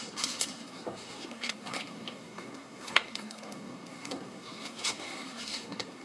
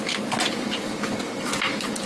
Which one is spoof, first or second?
first